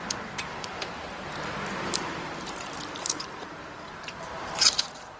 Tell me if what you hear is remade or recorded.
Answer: remade